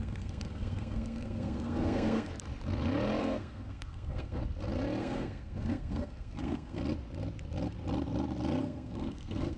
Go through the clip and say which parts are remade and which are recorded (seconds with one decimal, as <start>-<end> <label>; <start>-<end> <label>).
0.0-2.3 remade; 2.3-3.2 recorded; 3.2-4.4 remade; 4.4-5.0 recorded; 5.0-6.8 remade; 6.8-8.6 recorded; 8.6-9.6 remade